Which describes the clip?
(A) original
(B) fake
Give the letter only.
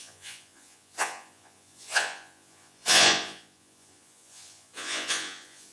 B